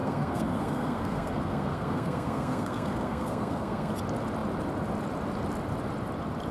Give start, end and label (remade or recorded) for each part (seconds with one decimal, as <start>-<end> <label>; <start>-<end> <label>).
0.0-3.9 remade; 3.9-6.5 recorded